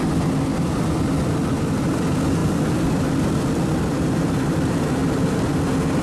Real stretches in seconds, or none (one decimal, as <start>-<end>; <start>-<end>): 0.0-2.4; 4.3-6.0